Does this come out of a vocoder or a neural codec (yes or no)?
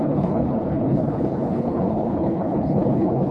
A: yes